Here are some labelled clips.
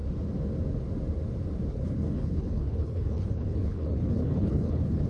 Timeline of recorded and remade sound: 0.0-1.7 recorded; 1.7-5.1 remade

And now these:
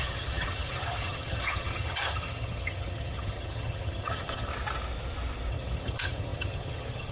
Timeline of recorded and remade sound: 0.0-4.5 remade; 4.5-5.5 recorded; 5.5-7.1 remade

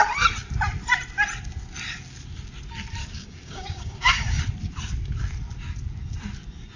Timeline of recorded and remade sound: 0.0-3.0 recorded; 3.0-4.4 remade; 4.4-6.8 recorded

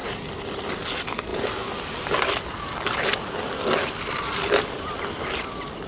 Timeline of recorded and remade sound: 0.0-0.6 remade; 0.6-5.9 recorded